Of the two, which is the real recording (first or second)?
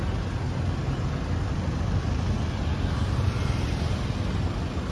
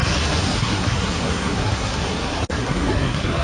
first